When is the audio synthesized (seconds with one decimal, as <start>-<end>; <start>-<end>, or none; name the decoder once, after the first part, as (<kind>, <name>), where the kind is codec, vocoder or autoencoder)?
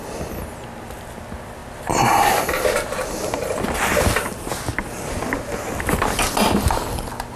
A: none